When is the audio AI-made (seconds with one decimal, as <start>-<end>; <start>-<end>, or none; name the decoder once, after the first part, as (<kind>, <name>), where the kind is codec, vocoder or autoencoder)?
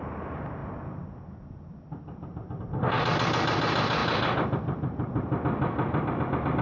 4.0-5.4 (vocoder, BigVGAN v2)